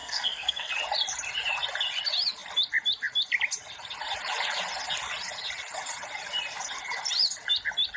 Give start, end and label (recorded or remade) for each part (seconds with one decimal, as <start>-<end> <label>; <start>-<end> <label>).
0.0-0.7 remade; 0.7-8.0 recorded